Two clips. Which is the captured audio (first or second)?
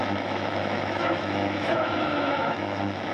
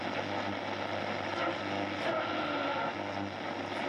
second